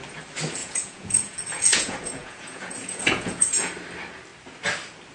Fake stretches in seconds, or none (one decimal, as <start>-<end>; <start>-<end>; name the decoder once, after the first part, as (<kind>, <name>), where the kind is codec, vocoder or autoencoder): 0.6-3.7 (vocoder, Vocos)